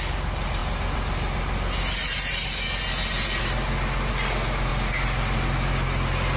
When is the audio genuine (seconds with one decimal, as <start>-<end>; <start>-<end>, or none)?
0.0-6.4